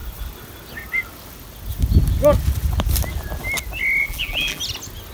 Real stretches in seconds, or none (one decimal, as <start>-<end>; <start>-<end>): 0.0-4.0; 4.6-5.1